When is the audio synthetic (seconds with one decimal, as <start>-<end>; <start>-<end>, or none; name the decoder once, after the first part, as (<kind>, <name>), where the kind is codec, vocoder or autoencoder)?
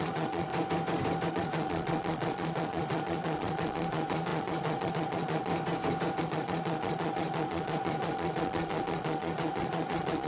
0.0-0.5 (vocoder, Vocos); 1.3-5.5; 6.2-10.3